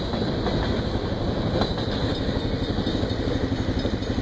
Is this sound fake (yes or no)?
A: no